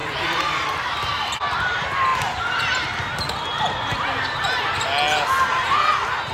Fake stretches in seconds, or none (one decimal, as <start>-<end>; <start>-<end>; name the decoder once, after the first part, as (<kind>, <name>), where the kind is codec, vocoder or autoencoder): none